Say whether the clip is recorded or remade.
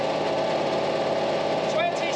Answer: recorded